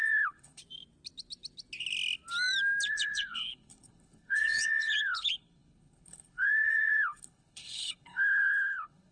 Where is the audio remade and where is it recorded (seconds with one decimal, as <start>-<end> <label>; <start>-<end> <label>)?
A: 0.0-0.6 remade; 0.6-2.9 recorded; 2.9-9.1 remade